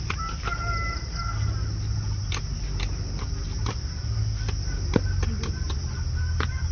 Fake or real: real